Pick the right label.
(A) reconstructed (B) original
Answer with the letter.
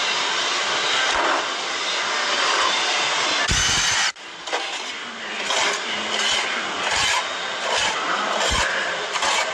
B